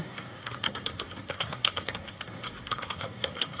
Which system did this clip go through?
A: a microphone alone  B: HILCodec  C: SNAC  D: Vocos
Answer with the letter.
C